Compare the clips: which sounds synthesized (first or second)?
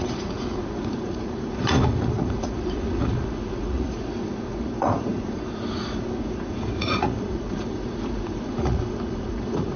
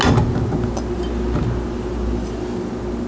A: first